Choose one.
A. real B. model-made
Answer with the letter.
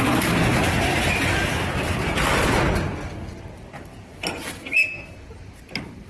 A